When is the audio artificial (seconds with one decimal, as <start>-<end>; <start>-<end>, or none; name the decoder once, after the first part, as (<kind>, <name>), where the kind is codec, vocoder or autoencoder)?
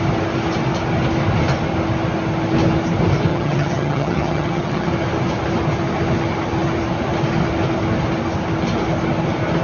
3.3-4.9 (vocoder, HiFi-GAN)